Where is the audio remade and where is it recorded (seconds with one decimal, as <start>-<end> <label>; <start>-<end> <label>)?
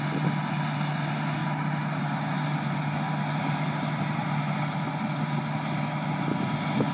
0.0-6.9 recorded